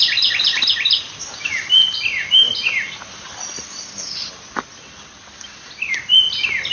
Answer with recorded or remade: recorded